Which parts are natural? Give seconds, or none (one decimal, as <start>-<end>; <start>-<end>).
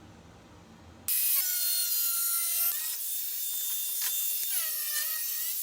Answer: 0.0-5.6